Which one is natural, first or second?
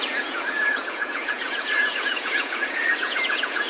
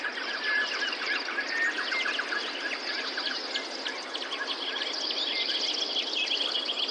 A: second